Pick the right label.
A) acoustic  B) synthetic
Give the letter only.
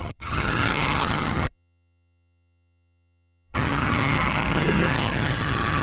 B